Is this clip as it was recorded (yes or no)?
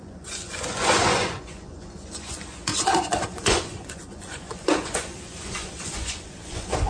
no